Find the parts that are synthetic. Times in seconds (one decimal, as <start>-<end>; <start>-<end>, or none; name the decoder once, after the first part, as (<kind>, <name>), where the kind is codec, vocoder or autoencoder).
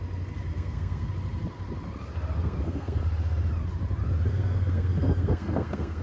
0.5-1.1 (codec, SNAC); 2.4-3.0; 4.3-6.0